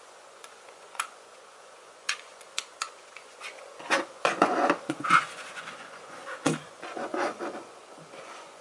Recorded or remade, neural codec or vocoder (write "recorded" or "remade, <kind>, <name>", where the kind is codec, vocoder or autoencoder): remade, vocoder, Vocos